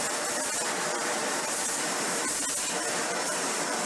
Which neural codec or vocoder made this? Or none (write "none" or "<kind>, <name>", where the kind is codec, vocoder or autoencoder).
vocoder, BigVGAN v2